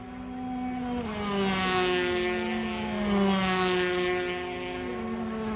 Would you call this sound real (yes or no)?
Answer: yes